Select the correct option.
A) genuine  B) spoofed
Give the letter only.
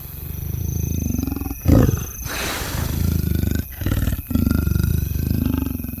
A